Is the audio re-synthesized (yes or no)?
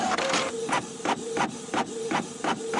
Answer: yes